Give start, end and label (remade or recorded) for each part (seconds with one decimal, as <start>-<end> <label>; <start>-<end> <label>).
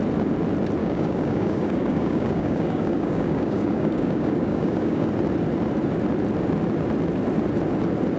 0.0-0.8 recorded; 0.8-5.1 remade; 5.1-8.2 recorded